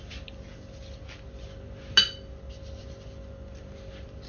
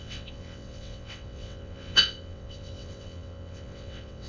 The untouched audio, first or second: first